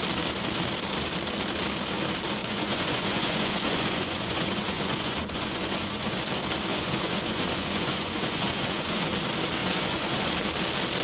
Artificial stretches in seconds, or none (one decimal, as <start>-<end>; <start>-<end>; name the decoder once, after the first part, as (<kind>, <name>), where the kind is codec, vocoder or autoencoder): 2.4-6.2 (vocoder, Vocos); 6.7-9.1; 9.6-10.3